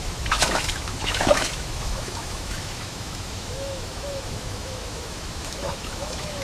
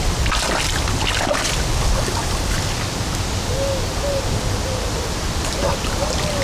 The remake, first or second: first